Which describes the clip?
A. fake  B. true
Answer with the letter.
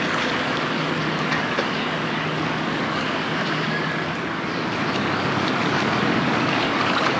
A